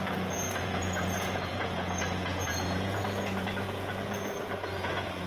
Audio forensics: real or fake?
fake